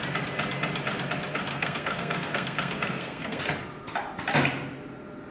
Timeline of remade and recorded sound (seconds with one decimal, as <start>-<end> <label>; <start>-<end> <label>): 0.0-1.5 recorded; 1.5-3.4 remade; 3.4-5.3 recorded